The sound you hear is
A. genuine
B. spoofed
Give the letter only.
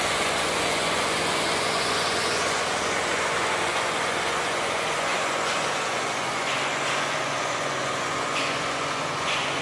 B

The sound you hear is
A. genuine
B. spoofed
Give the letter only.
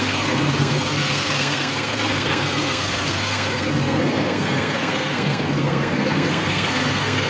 B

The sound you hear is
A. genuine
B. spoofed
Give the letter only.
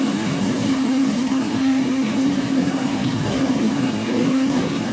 B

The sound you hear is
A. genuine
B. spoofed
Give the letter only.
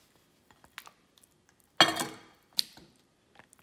A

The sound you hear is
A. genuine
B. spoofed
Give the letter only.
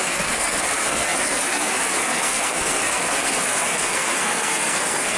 B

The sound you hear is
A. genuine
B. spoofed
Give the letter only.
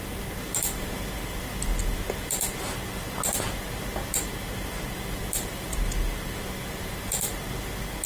A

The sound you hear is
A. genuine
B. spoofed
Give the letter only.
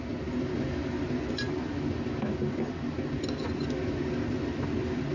A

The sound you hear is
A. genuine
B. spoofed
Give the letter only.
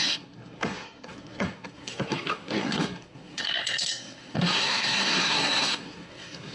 B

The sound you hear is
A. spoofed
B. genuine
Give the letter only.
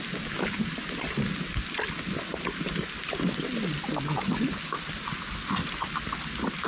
B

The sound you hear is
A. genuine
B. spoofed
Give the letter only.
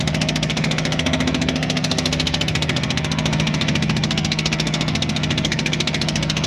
B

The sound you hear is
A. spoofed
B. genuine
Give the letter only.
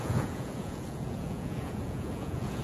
A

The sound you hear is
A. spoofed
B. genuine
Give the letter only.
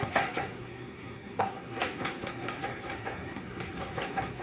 A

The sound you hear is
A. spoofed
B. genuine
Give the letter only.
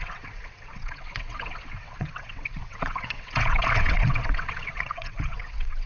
A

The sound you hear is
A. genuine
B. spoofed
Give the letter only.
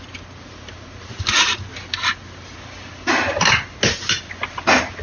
A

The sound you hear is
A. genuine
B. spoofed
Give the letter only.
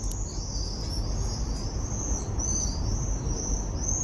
A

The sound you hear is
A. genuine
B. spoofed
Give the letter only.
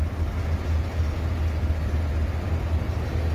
A